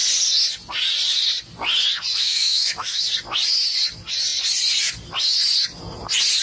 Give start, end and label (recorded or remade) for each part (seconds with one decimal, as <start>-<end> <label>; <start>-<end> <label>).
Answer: 0.0-2.1 recorded; 2.1-3.0 remade; 3.0-6.4 recorded